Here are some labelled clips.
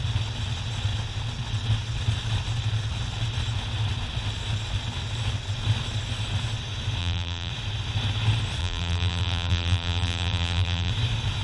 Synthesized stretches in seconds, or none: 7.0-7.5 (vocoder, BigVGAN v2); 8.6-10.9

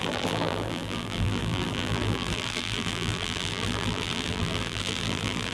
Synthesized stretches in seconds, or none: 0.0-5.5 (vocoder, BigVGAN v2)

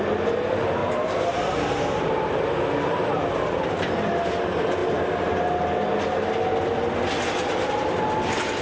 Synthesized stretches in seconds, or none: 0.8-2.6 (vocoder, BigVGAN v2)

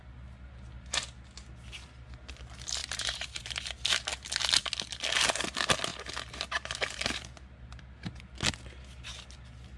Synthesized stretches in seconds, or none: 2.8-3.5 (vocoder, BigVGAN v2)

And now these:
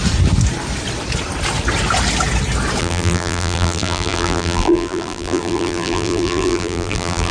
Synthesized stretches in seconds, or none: 2.8-7.3 (vocoder, BigVGAN v2)